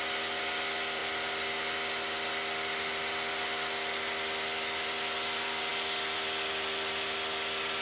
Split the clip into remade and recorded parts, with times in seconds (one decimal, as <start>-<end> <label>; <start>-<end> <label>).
0.0-7.8 recorded